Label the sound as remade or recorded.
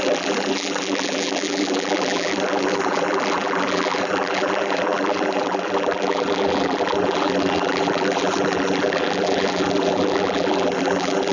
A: remade